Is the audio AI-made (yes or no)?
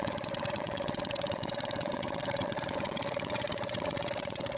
yes